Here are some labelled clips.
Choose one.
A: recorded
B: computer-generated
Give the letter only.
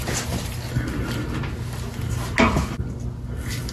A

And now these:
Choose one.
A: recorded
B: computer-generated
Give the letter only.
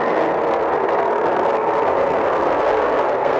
B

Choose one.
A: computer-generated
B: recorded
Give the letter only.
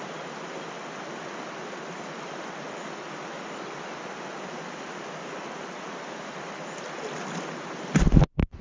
B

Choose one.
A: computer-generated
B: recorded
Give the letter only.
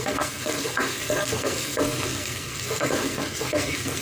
A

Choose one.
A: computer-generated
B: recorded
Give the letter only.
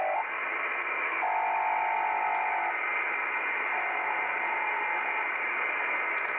B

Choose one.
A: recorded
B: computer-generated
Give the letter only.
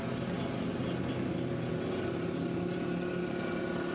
A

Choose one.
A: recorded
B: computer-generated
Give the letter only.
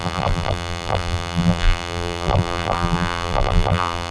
B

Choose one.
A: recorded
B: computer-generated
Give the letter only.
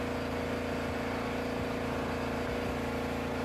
A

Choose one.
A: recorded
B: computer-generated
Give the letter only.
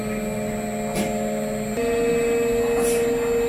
A